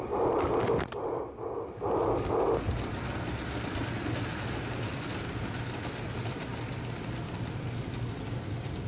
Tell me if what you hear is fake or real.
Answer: real